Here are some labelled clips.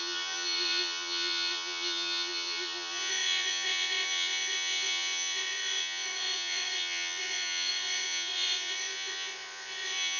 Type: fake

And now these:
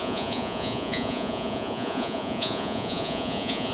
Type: fake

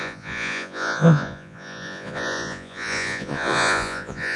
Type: fake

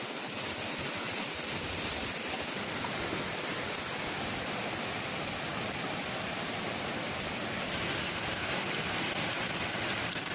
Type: real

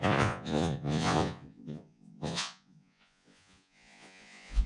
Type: fake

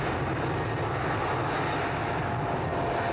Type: real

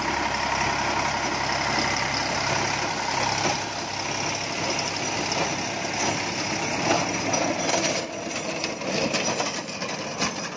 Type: real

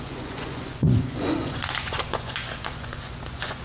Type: fake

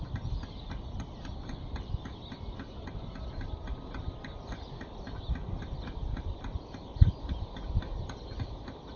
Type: real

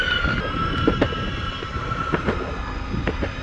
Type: real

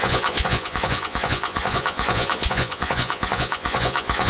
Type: fake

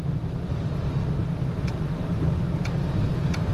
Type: real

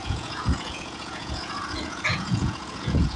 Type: fake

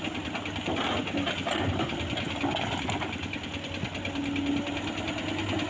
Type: real